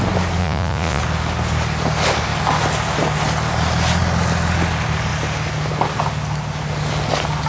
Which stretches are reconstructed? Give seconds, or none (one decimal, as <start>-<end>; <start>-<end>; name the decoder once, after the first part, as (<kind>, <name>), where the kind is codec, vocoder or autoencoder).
0.4-1.0 (vocoder, Vocos)